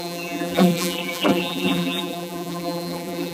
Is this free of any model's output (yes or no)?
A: no